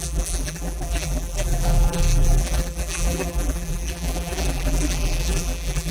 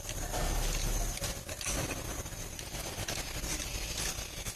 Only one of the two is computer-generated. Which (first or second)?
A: first